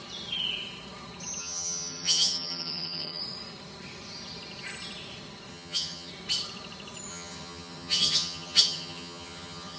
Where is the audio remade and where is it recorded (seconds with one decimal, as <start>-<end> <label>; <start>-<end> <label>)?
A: 0.0-1.4 recorded; 1.4-3.2 remade; 3.2-5.5 recorded; 5.5-6.1 remade; 6.1-7.1 recorded; 7.1-9.8 remade